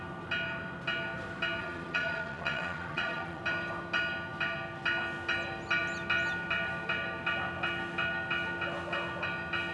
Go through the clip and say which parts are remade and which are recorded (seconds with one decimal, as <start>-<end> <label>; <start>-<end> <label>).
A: 0.0-1.6 recorded; 1.6-3.4 remade; 3.4-9.7 recorded